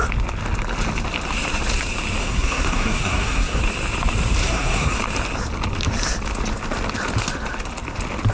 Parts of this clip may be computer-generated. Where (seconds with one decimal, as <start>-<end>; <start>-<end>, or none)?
2.2-3.6; 4.4-5.0